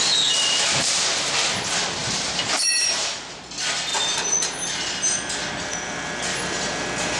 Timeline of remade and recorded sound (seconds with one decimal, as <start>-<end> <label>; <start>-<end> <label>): 0.0-3.9 remade; 3.9-5.6 recorded; 5.6-7.2 remade